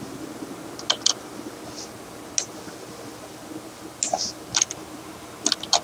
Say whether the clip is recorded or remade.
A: recorded